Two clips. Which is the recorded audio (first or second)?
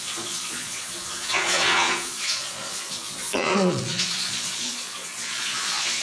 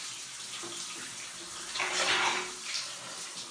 second